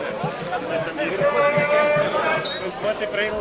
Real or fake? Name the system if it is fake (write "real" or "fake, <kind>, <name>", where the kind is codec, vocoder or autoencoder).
real